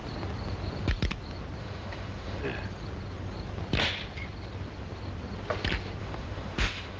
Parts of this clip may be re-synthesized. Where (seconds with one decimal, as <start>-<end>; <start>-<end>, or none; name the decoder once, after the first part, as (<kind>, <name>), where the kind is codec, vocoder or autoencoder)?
1.6-2.4 (autoencoder, DAC-VAE); 6.0-7.0